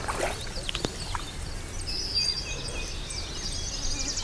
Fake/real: real